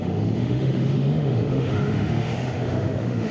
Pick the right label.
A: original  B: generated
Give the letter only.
B